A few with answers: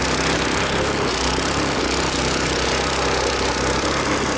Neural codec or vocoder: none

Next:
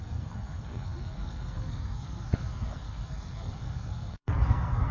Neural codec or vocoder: codec, SNAC